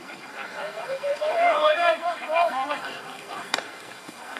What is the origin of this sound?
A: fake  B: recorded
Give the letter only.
A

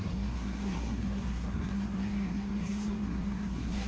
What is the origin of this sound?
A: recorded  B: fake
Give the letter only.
B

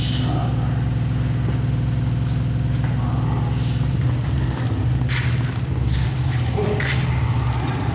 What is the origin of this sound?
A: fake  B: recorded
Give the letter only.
B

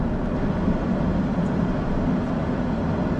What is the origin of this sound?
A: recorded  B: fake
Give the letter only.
A